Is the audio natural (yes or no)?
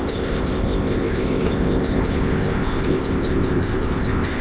no